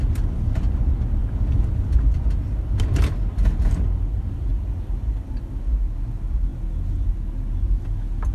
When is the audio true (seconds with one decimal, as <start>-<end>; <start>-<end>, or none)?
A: 0.0-8.3